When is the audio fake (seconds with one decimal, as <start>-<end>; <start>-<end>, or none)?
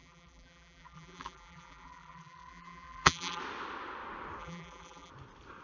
0.0-3.4; 4.4-5.1